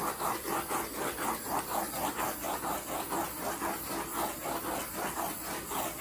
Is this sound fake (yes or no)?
yes